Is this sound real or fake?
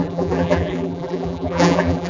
fake